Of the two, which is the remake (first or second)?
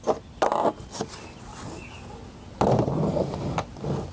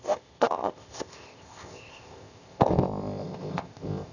second